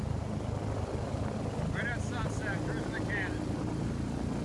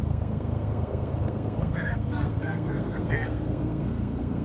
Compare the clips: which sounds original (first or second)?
first